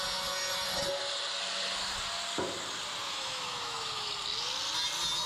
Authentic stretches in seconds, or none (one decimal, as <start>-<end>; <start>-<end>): 0.0-3.0; 4.1-5.3